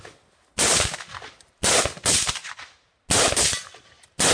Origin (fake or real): real